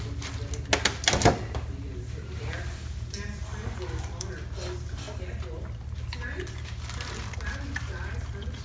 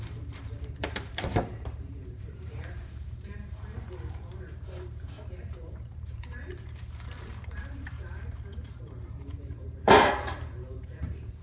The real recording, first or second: first